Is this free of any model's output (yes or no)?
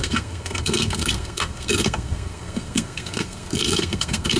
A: no